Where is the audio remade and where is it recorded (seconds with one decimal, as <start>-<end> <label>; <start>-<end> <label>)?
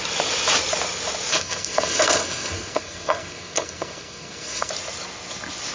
0.0-1.3 recorded; 1.3-4.7 remade; 4.7-5.7 recorded